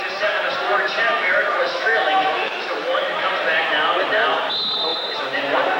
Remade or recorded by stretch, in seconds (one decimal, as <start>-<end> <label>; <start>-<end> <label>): 0.0-1.1 recorded; 1.1-3.3 remade; 3.3-5.8 recorded